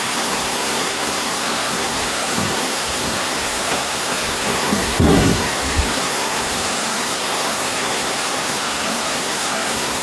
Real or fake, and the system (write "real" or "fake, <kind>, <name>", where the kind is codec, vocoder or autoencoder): fake, codec, SNAC